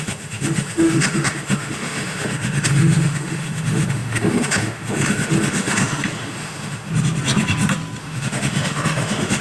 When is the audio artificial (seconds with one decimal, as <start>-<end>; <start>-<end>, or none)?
0.0-6.9; 8.0-9.4